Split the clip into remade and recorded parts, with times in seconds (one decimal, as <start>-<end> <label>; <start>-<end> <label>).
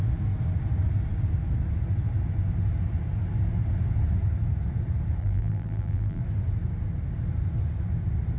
0.0-5.2 recorded; 5.2-6.2 remade; 6.2-8.4 recorded